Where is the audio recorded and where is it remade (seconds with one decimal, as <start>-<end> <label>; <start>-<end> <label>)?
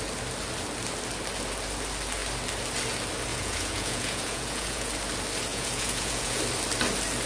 0.0-3.3 recorded; 3.3-4.9 remade; 4.9-5.5 recorded; 5.5-6.4 remade; 6.4-7.3 recorded